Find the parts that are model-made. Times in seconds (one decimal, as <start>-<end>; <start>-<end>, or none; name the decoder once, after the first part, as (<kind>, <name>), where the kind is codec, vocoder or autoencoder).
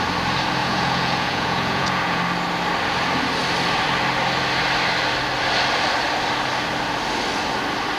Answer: 0.6-2.2 (vocoder, Vocos)